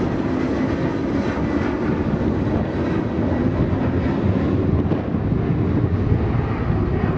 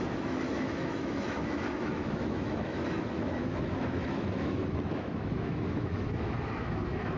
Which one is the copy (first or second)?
second